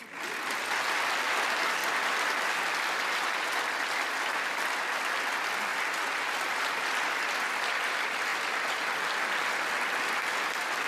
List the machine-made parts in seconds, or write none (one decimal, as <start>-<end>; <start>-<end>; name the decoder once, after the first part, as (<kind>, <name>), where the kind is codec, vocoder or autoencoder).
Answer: none